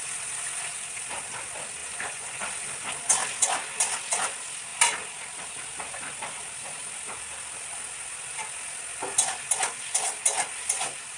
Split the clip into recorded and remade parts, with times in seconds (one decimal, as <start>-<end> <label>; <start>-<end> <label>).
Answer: 0.0-1.8 recorded; 1.8-2.4 remade; 2.4-11.2 recorded